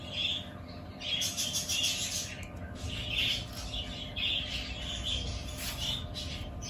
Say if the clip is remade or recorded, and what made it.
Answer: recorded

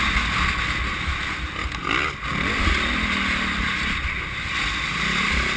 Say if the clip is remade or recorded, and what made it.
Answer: recorded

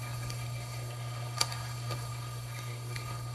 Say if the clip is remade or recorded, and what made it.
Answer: remade, codec, SNAC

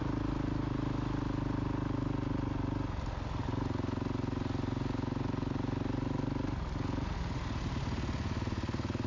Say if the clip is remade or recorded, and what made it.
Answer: recorded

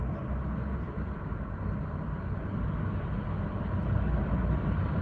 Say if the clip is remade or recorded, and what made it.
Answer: recorded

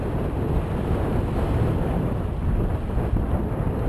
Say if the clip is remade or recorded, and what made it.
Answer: recorded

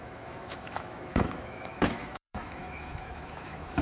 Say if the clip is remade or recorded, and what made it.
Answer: remade, autoencoder, DAC-VAE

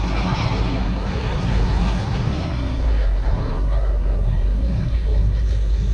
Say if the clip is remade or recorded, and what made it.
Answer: remade, codec, SNAC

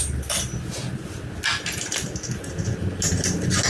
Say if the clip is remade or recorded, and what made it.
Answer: recorded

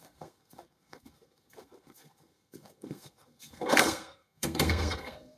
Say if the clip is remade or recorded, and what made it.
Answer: remade, codec, SNAC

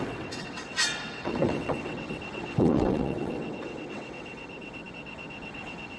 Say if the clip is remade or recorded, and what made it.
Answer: remade, vocoder, WaveNeXt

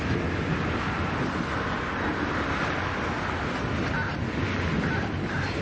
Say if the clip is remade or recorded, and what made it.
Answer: recorded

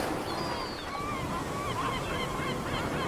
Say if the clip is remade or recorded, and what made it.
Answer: recorded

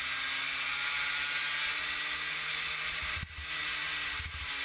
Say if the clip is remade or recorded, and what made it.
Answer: recorded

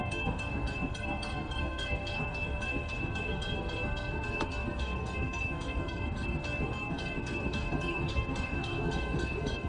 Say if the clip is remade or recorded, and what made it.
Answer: remade, codec, SNAC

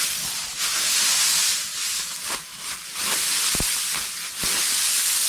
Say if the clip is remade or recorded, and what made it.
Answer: recorded